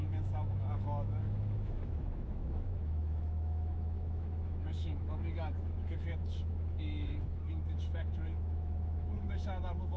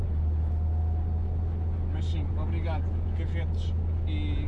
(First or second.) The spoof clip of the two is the first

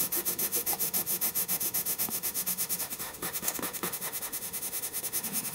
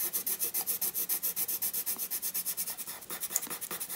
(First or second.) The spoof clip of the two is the first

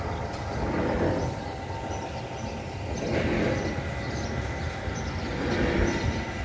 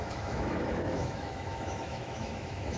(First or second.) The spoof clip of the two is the second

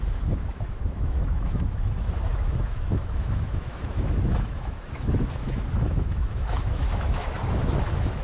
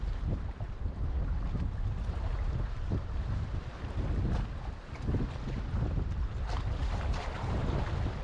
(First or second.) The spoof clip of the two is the first